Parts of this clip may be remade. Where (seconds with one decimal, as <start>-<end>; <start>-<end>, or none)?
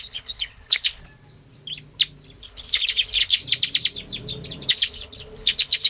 0.0-1.0; 2.4-3.4; 4.7-5.9